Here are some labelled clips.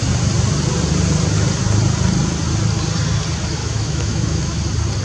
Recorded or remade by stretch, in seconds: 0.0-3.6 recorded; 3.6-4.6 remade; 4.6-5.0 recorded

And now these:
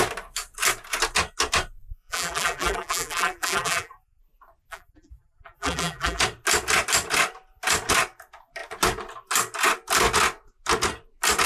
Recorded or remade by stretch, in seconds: 0.0-1.9 recorded; 1.9-4.2 remade; 4.2-4.7 recorded; 4.7-6.2 remade; 6.2-11.5 recorded

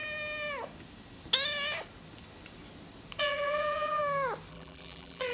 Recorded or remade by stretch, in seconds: 0.0-3.2 recorded; 3.2-4.0 remade; 4.0-4.5 recorded; 4.5-5.3 remade

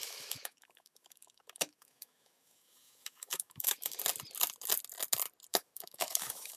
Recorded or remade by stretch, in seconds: 0.0-4.0 remade; 4.0-5.5 recorded; 5.5-6.6 remade

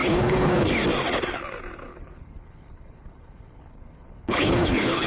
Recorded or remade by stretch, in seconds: 0.0-0.7 remade; 0.7-1.9 recorded; 1.9-5.1 remade

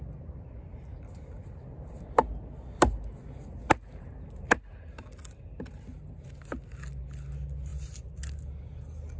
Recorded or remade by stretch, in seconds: 0.0-9.2 recorded

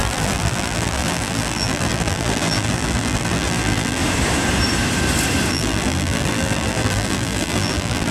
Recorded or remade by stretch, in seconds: 0.0-4.0 remade; 4.0-5.5 recorded; 5.5-8.1 remade